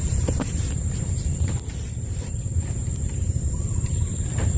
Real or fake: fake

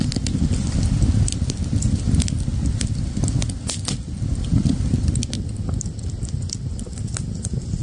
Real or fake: real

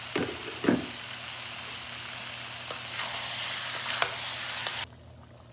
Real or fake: real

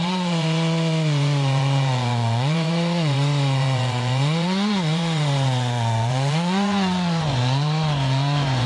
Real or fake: fake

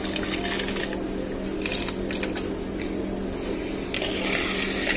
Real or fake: real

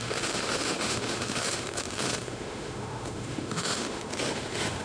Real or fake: fake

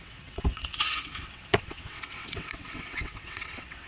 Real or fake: fake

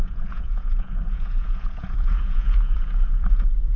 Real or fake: fake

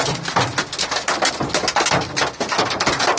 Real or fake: real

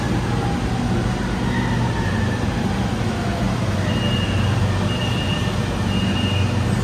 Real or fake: real